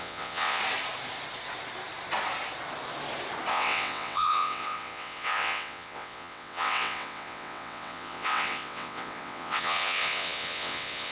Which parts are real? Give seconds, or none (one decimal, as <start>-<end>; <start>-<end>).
0.6-3.5